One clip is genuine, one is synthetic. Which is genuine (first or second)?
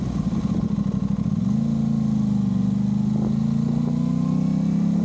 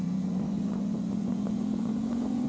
first